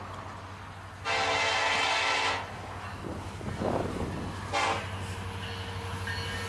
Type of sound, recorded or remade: recorded